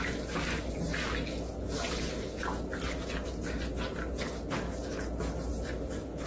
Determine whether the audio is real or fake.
real